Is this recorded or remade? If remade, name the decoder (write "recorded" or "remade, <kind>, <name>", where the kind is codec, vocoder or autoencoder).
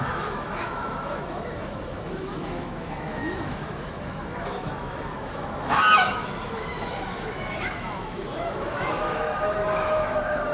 remade, autoencoder, DAC-VAE